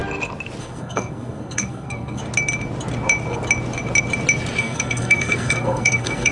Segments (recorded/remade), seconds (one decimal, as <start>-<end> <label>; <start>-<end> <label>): 0.0-0.6 recorded; 0.6-2.2 remade; 2.2-4.6 recorded; 4.6-6.3 remade